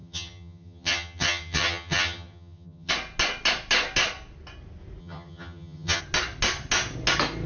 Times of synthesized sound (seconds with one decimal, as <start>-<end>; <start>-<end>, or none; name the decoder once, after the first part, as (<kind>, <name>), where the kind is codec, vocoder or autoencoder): 0.0-2.9 (vocoder, HiFi-GAN); 5.0-6.0